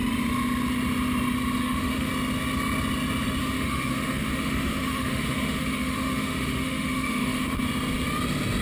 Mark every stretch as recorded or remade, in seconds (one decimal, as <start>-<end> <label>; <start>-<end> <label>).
0.0-1.6 recorded; 1.6-2.1 remade; 2.1-3.4 recorded; 3.4-7.6 remade; 7.6-8.6 recorded